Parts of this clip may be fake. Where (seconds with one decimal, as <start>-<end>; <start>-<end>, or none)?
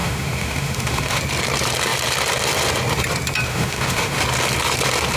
0.0-1.2; 3.5-4.2